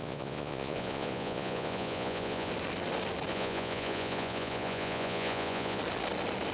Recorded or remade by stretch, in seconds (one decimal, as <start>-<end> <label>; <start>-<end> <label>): 0.0-2.5 remade; 2.5-3.3 recorded; 3.3-5.8 remade; 5.8-6.5 recorded